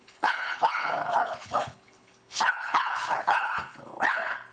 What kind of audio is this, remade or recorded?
remade